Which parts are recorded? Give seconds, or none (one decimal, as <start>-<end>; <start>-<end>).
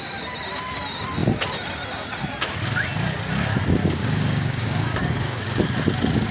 0.0-3.8; 5.6-6.3